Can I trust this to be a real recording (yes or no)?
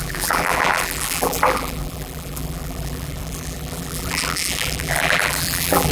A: no